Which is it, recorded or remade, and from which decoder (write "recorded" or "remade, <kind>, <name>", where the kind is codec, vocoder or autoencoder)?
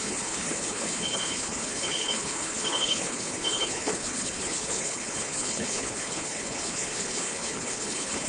remade, codec, HILCodec